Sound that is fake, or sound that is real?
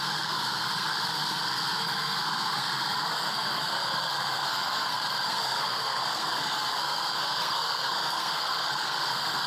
fake